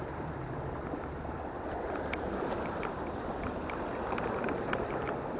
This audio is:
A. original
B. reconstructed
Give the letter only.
B